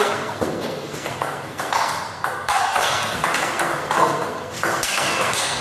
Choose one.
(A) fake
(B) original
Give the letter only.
A